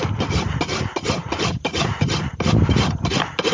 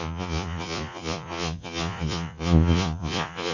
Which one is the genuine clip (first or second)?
first